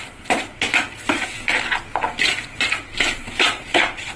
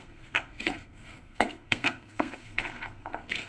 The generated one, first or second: second